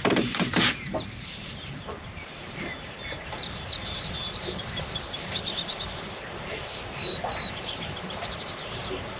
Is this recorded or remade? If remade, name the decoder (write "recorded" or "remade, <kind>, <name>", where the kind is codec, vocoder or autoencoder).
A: remade, vocoder, BigVGAN v2